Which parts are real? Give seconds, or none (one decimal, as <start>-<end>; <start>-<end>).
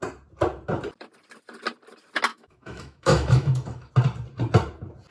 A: 0.0-2.3; 3.9-5.1